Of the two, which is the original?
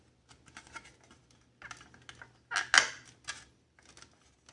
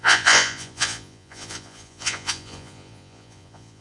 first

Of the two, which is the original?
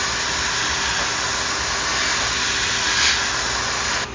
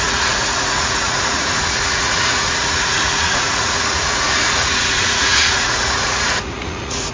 first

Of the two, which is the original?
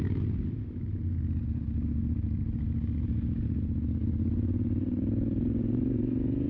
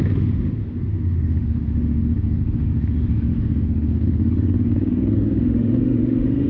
first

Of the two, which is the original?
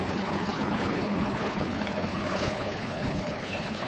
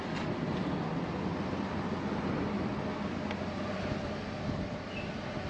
second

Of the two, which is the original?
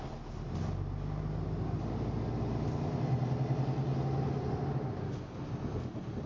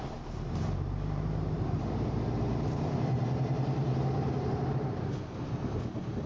first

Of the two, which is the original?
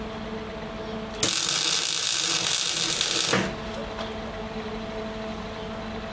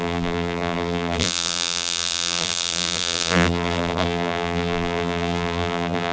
first